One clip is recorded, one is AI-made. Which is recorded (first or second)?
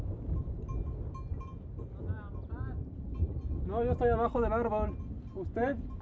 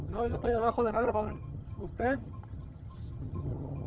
first